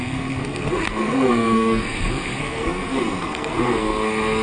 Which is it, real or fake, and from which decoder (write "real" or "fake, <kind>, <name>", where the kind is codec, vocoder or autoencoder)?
fake, codec, SNAC